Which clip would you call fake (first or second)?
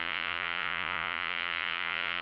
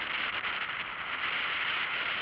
first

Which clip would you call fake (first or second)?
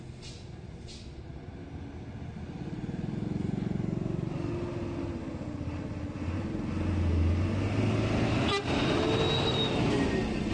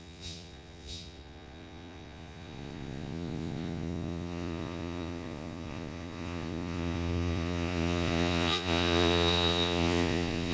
second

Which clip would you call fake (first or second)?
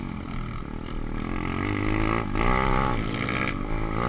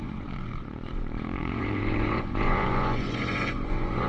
second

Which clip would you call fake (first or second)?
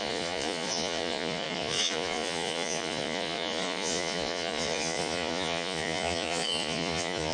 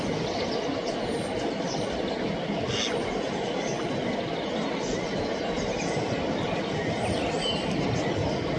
first